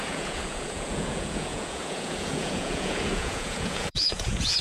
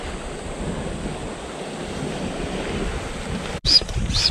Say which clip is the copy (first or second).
first